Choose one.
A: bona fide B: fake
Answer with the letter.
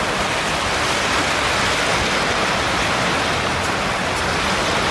A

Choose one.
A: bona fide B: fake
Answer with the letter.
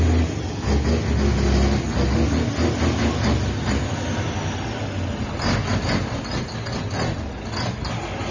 A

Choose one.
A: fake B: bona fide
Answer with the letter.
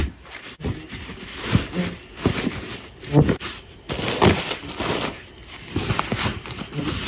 B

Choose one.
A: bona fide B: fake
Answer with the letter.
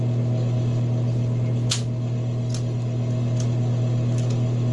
A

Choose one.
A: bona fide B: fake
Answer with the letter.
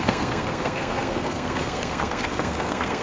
B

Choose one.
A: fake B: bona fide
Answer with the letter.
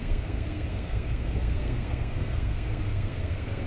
A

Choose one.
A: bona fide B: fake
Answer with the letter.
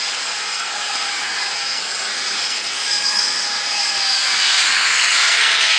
B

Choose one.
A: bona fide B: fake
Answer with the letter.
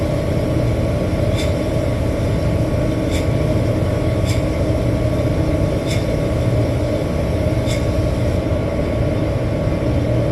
A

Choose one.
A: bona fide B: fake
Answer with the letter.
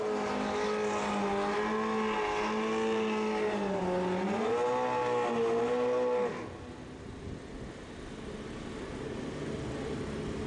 A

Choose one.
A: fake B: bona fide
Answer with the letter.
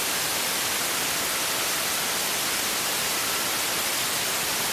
B